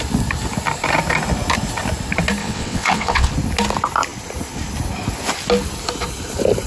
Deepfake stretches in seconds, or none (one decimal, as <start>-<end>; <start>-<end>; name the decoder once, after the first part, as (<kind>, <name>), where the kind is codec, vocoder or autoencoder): 2.4-3.3 (vocoder, WaveNeXt)